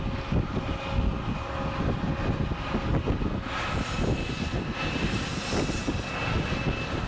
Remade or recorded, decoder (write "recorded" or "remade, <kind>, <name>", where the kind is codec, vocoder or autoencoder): recorded